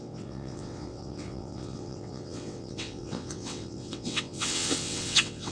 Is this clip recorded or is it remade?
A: remade